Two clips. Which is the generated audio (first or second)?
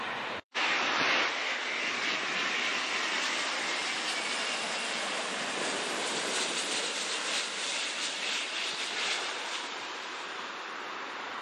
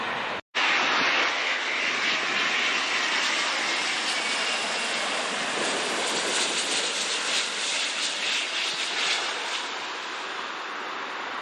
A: first